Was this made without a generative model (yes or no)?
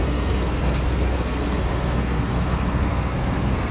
no